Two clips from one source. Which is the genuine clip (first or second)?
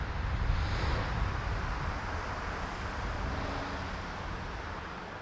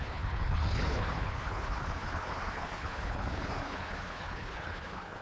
first